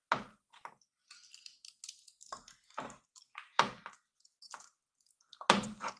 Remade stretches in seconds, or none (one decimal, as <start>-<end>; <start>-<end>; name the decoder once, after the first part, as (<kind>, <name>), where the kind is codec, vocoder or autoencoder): none